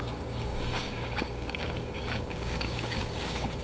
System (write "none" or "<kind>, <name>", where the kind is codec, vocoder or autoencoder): codec, DAC